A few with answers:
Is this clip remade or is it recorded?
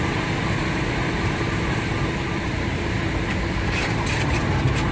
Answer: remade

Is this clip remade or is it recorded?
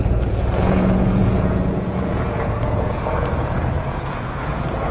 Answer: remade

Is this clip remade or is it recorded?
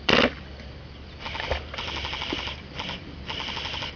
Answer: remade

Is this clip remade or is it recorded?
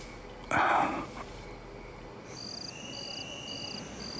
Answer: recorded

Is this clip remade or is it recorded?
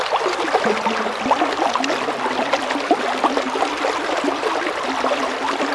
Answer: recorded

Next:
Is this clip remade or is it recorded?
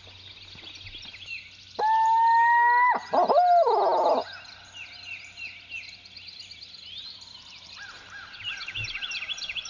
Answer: recorded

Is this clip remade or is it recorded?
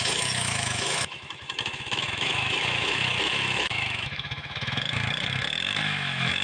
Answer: remade